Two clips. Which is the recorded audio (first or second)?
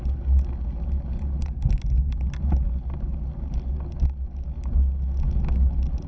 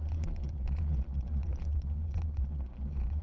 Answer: first